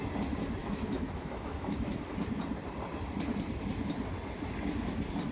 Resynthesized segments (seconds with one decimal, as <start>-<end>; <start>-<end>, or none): 0.6-2.0